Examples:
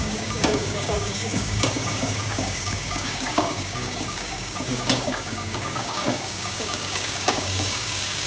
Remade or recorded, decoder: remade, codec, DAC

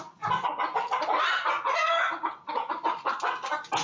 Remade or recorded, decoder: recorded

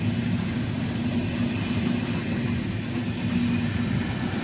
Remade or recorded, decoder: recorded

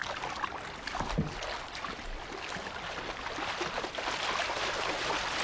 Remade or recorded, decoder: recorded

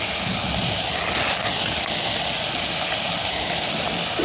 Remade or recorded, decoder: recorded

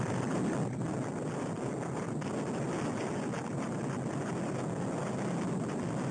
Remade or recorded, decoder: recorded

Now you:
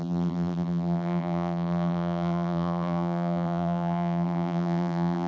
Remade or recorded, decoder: remade, vocoder, BigVGAN v2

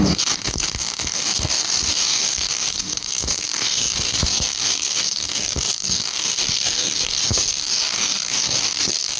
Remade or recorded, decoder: remade, codec, DAC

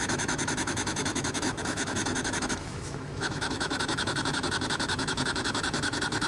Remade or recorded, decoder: remade, autoencoder, DAC-VAE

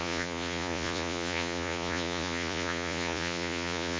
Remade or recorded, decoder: remade, vocoder, Vocos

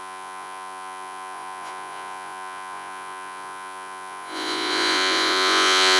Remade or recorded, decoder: remade, vocoder, Vocos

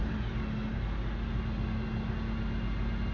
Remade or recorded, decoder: recorded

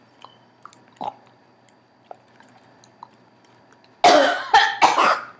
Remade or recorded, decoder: recorded